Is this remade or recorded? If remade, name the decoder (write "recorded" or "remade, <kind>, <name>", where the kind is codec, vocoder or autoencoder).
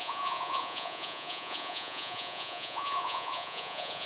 remade, vocoder, Vocos